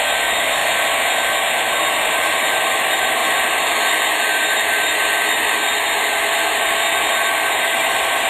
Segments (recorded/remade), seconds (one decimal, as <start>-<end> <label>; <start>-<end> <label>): 0.0-0.6 remade; 0.6-2.0 recorded; 2.0-3.2 remade; 3.2-7.6 recorded; 7.6-8.3 remade